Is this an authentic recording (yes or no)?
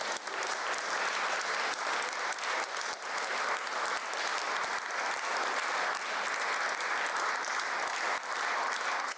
yes